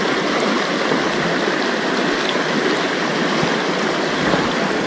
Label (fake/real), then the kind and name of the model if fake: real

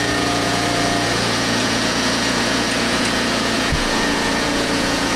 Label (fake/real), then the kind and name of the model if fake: fake, vocoder, Vocos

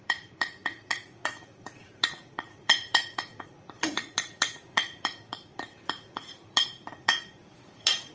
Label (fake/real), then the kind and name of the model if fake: fake, vocoder, Vocos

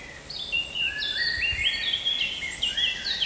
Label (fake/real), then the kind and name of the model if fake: real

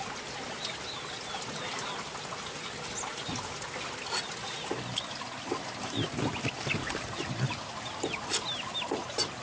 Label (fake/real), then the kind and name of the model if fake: real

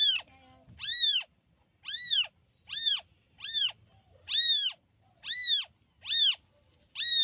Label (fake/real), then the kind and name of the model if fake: real